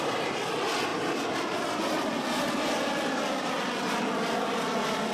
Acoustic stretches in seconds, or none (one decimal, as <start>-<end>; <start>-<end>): 0.0-5.1